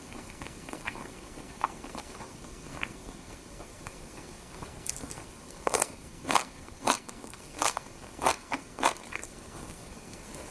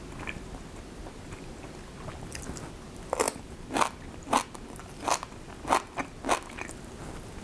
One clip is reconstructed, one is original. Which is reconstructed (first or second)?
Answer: first